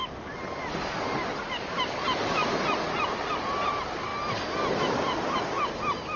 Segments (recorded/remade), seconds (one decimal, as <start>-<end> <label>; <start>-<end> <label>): 0.0-6.2 recorded